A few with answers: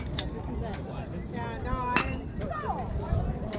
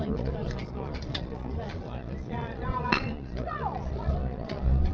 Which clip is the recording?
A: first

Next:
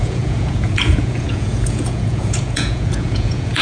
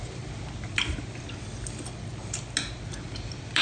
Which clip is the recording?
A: second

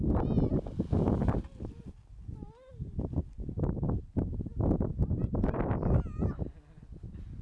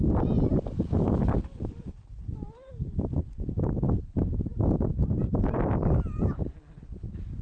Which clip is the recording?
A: first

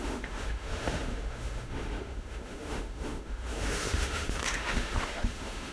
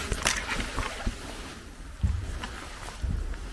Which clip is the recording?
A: second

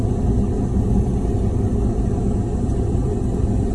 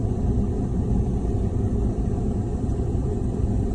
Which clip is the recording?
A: first